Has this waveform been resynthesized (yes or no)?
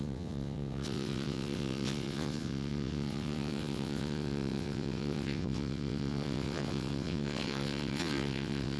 yes